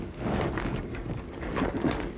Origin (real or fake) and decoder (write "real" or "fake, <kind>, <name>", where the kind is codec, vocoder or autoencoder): fake, codec, DAC